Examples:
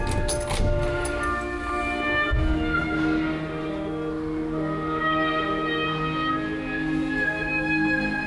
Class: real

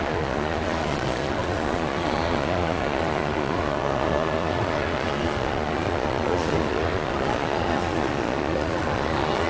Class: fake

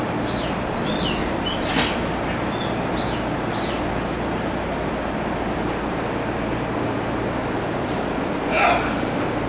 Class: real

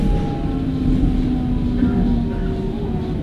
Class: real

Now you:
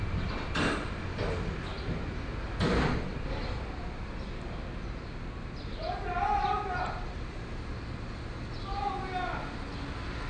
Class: real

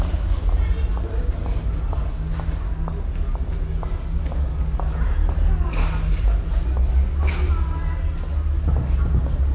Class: real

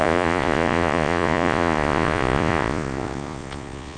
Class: fake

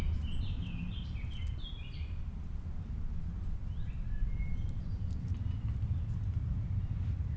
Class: real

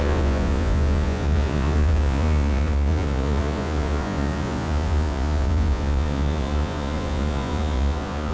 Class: fake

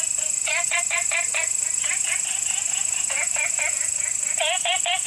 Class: fake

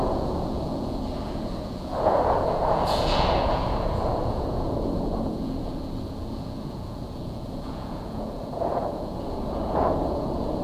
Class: fake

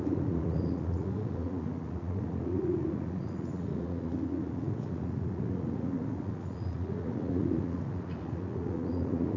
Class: fake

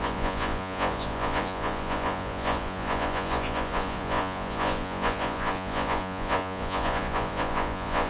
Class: fake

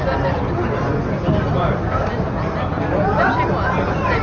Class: real